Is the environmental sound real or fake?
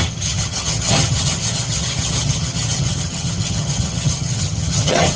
fake